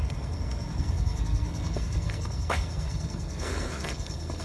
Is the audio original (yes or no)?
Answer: no